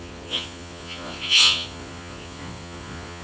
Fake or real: fake